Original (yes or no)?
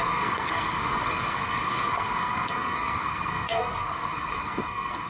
no